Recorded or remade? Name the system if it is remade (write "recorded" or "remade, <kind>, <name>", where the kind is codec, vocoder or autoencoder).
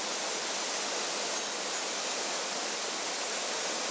recorded